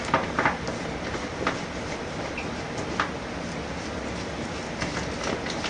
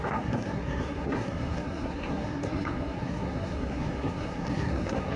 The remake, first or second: second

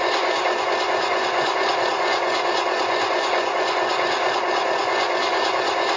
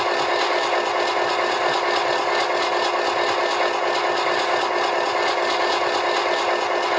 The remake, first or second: first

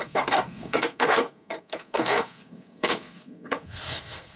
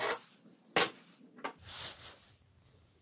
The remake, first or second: first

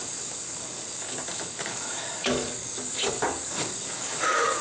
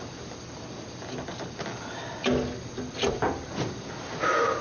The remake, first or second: first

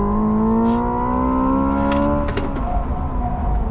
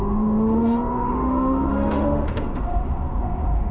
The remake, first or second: second